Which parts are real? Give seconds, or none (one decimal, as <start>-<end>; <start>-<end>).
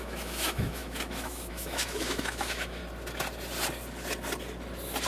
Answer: 2.8-5.1